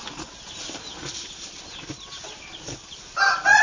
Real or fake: real